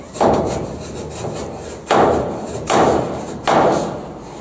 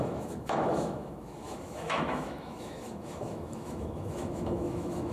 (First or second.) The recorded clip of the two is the first